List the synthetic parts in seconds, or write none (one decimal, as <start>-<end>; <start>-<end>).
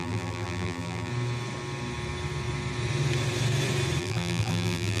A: 0.0-1.1; 4.0-5.0